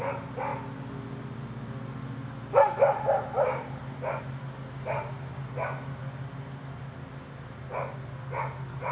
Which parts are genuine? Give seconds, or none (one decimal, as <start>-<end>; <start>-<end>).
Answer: 0.0-8.9